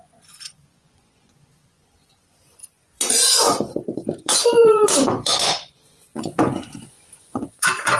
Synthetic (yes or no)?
yes